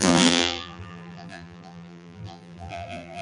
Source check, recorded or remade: remade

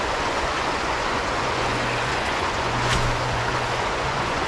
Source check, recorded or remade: remade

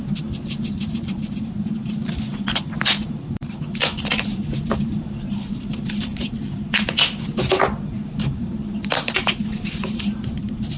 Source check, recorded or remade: remade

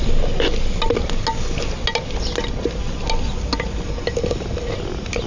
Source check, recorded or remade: recorded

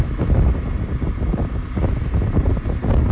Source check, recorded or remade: recorded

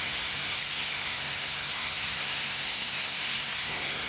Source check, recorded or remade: remade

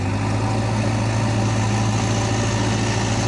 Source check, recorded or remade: recorded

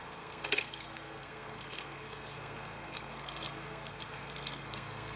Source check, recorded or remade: remade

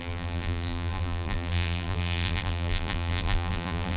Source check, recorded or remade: remade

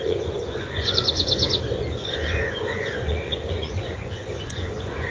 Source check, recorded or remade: remade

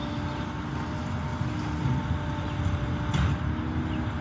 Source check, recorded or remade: recorded